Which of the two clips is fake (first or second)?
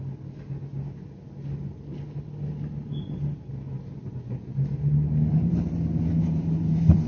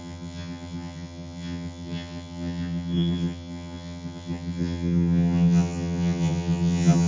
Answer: second